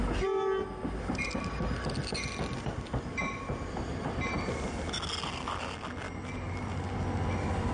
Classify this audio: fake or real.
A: real